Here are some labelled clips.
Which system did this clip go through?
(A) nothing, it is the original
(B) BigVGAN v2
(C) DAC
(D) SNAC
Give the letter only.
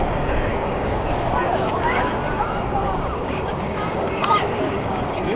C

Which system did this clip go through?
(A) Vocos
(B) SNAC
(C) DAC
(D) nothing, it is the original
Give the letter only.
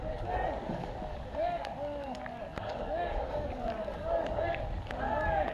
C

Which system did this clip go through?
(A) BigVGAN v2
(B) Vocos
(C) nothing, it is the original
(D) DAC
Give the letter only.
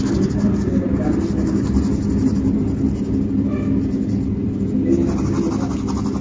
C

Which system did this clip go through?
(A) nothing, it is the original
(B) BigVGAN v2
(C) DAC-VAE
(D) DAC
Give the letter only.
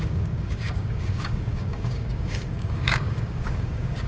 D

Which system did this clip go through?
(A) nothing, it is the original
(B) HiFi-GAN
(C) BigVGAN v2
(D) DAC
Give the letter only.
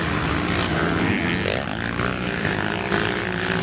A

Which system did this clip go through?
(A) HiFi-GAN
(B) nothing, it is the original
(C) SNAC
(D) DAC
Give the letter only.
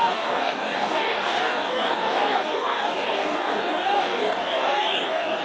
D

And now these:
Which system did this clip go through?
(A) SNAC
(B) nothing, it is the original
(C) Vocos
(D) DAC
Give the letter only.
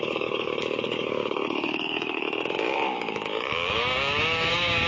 D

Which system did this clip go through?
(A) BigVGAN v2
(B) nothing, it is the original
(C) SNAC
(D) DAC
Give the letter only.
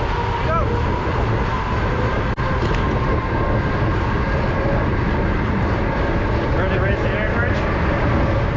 B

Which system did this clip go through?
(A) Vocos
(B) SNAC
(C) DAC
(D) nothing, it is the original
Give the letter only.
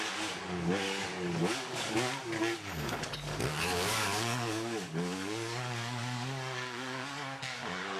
C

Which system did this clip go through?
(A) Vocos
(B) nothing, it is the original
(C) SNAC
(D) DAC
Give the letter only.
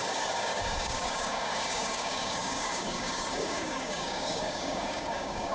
D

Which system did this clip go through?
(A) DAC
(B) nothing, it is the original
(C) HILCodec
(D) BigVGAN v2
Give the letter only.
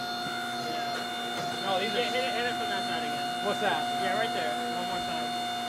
B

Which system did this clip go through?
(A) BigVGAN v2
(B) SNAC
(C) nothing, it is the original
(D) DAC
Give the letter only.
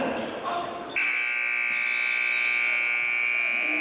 C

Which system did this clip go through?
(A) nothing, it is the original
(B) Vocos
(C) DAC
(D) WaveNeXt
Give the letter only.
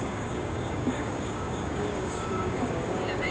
C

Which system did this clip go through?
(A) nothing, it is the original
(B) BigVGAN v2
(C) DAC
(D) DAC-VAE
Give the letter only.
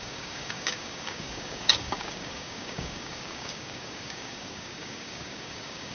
C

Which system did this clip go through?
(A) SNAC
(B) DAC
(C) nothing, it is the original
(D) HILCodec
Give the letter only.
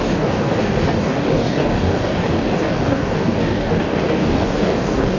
B